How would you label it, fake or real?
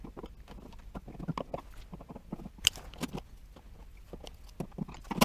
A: real